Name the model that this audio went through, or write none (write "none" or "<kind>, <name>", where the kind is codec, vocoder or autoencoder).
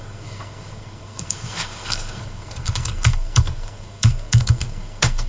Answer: codec, SNAC